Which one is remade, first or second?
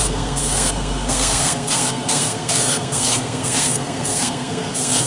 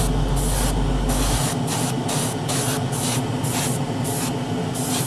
first